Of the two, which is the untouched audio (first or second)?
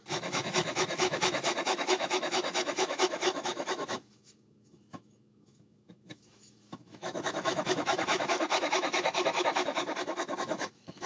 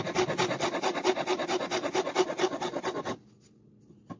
second